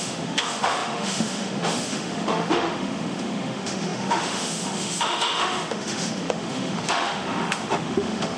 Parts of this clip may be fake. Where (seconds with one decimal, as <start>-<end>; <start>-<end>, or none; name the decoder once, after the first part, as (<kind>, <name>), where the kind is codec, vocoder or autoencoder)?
0.0-8.4 (autoencoder, DAC-VAE)